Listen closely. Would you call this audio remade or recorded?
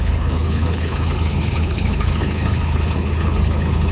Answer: remade